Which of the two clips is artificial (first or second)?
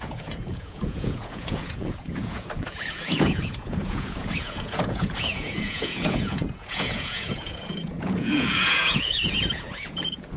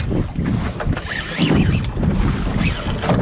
first